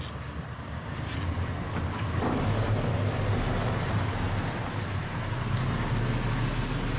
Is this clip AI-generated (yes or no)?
no